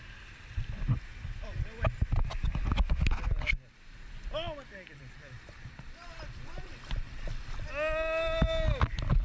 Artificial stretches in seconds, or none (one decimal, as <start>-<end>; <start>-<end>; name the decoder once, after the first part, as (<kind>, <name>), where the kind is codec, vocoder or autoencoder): none